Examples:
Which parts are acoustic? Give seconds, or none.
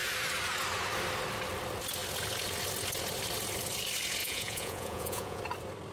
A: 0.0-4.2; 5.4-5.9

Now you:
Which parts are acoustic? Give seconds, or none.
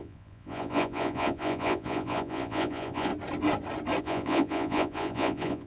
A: 3.1-4.0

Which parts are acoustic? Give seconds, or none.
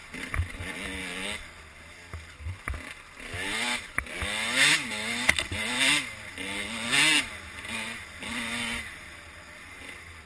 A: 0.0-10.3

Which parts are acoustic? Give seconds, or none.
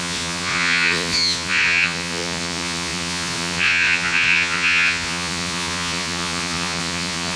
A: none